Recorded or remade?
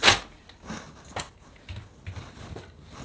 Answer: recorded